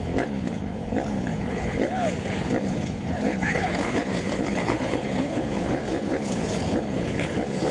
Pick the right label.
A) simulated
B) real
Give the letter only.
A